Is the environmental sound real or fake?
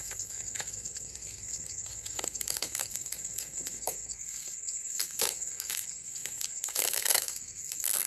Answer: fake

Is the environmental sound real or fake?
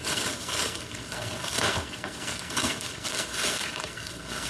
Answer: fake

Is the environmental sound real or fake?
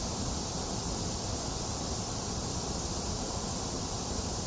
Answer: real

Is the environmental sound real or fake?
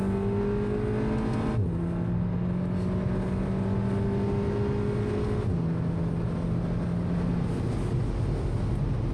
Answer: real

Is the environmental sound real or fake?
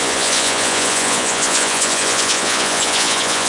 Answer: fake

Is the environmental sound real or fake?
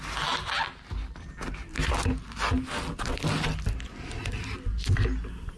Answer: real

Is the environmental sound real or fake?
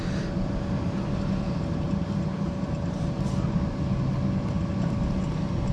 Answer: real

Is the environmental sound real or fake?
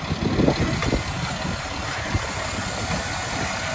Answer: real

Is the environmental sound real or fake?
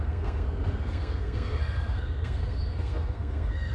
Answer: fake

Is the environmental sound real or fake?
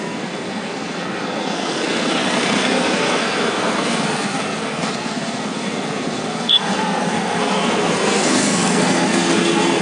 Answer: fake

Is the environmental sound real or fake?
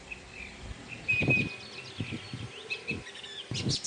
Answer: real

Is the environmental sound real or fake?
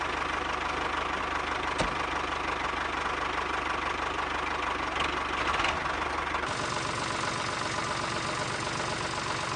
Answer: real